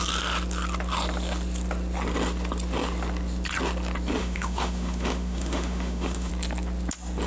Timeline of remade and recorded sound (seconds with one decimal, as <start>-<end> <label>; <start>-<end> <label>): 0.0-4.2 recorded; 4.2-6.3 remade; 6.3-7.3 recorded